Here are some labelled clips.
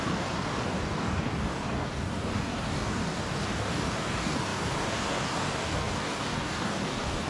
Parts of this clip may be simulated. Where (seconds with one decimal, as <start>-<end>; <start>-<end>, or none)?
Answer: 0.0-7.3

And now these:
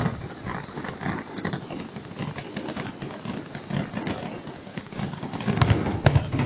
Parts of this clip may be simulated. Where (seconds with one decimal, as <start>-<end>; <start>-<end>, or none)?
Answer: 4.7-6.0

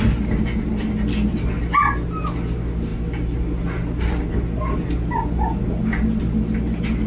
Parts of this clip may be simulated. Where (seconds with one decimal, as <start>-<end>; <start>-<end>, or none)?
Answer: none

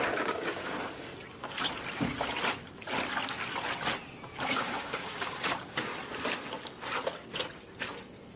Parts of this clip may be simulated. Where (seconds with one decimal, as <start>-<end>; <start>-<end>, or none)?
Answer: 0.0-1.1; 4.5-5.9

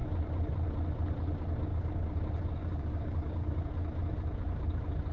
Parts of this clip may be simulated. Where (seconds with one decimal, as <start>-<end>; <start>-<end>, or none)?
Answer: 1.7-2.2; 2.6-3.7

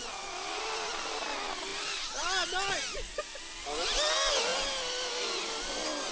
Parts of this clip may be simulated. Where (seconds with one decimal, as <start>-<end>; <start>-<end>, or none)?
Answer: none

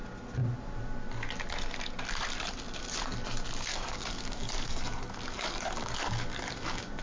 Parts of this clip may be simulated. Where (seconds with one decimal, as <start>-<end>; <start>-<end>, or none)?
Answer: 3.7-7.0